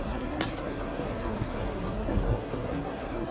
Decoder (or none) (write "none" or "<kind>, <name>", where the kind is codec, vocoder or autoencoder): codec, SNAC